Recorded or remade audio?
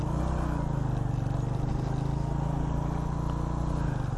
recorded